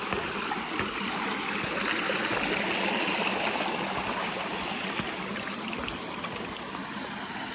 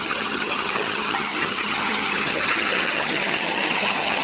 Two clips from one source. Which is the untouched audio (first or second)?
first